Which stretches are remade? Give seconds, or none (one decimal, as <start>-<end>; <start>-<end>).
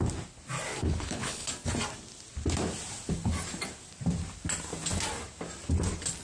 0.8-1.5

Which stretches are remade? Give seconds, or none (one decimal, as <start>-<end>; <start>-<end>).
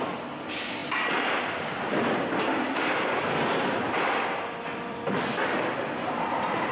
0.0-0.8; 1.4-6.7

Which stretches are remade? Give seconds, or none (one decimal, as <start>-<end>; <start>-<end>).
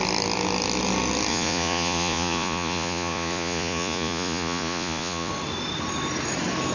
1.3-5.3